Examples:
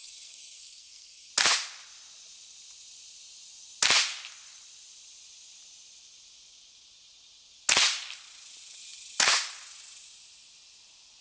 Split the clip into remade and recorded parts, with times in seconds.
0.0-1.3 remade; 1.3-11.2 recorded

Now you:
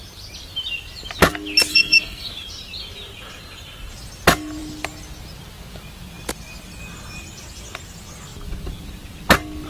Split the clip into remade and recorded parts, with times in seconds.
0.0-1.7 recorded; 1.7-2.3 remade; 2.3-9.7 recorded

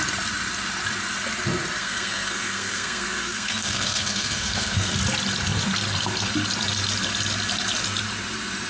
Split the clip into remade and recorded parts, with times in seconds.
0.0-1.8 recorded; 1.8-4.9 remade; 4.9-8.7 recorded

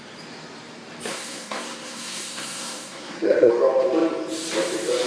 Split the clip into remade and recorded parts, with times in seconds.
0.0-1.1 recorded; 1.1-3.5 remade; 3.5-5.1 recorded

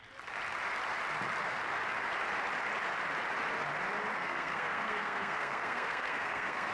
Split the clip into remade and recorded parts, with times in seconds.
0.0-4.2 recorded; 4.2-6.7 remade

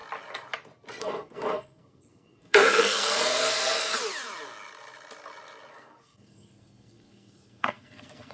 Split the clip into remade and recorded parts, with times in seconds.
0.0-1.0 recorded; 1.0-3.9 remade; 3.9-5.7 recorded; 5.7-8.3 remade

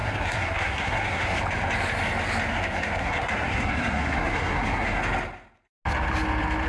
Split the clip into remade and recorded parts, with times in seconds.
0.0-1.4 remade; 1.4-2.5 recorded; 2.5-5.0 remade; 5.0-6.7 recorded

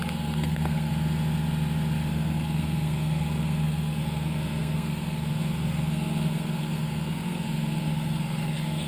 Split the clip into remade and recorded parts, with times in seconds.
0.0-0.9 remade; 0.9-2.1 recorded; 2.1-8.9 remade